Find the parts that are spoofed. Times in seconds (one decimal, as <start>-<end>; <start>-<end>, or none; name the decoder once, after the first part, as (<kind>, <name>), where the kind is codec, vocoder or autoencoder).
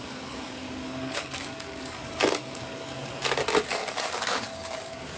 0.0-3.1 (codec, DAC); 3.8-5.2